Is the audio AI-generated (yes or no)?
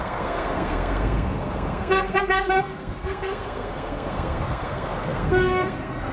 yes